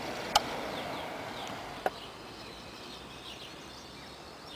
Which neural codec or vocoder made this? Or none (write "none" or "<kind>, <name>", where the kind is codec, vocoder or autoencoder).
none